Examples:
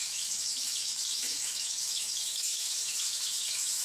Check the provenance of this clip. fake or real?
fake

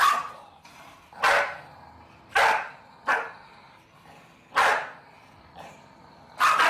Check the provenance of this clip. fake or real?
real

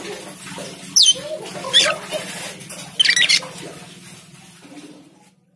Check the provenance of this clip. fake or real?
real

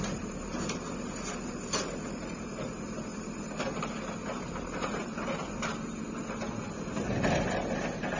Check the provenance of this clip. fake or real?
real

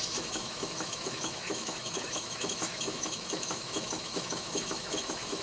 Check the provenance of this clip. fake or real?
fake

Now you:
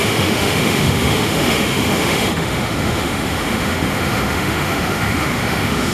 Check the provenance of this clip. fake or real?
fake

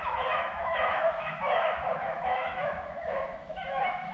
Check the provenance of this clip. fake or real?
fake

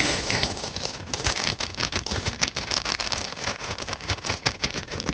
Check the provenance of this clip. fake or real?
fake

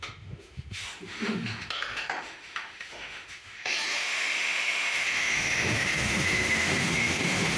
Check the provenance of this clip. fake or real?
fake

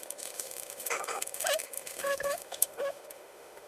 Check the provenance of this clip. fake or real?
fake